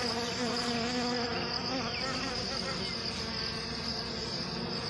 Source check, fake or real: real